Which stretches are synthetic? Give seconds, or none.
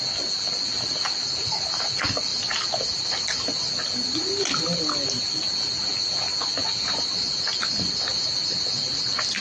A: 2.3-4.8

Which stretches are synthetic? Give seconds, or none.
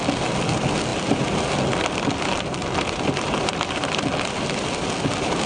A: 2.6-3.9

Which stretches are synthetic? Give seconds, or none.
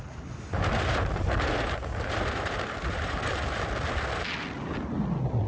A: 0.0-3.3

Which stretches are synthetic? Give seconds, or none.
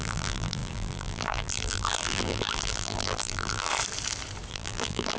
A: 0.0-3.7; 4.5-5.2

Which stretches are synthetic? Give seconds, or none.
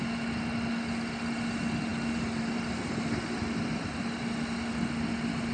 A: none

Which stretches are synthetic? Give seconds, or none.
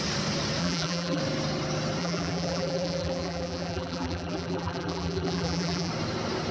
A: 0.6-1.2; 2.0-5.9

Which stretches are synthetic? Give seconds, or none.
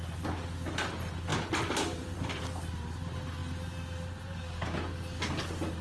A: 1.3-2.4